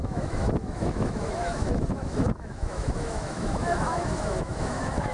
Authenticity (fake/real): fake